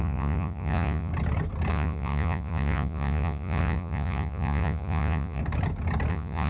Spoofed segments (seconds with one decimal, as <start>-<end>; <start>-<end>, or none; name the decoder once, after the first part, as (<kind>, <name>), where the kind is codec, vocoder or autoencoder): 0.0-1.1 (vocoder, Vocos); 1.7-5.4; 6.1-6.5

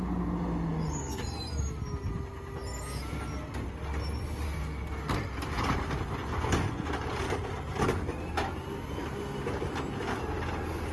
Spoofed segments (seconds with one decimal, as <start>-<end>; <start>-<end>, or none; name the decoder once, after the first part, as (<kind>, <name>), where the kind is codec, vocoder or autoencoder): 6.2-6.9 (vocoder, Vocos)

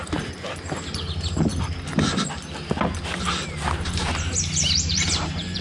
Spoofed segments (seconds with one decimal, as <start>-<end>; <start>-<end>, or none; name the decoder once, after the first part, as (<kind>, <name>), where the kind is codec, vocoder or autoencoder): 0.0-1.5 (vocoder, BigVGAN v2); 4.9-5.6

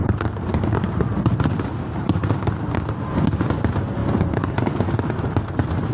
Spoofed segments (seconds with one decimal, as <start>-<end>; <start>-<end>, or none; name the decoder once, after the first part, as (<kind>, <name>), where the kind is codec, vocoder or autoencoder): 0.0-1.6 (vocoder, BigVGAN v2)